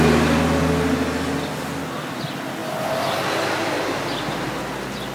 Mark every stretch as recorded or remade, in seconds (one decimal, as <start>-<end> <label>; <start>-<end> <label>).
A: 0.0-5.1 recorded